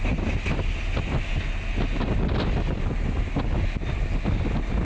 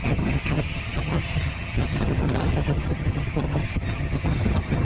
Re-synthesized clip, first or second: second